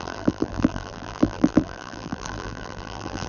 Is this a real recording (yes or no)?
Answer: no